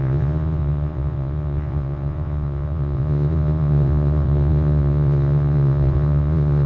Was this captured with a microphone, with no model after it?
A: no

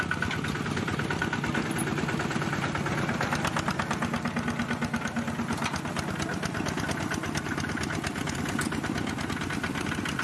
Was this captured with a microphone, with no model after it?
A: yes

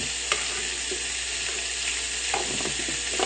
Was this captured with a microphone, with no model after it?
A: yes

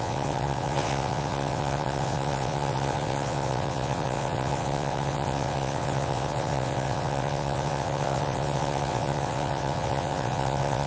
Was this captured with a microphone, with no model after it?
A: no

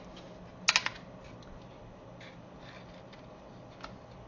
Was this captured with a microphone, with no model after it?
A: yes